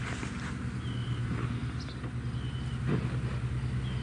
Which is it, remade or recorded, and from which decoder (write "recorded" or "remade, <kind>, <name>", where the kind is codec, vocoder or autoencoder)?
recorded